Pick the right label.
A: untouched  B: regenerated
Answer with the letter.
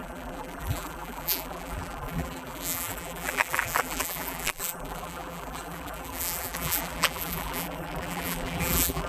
B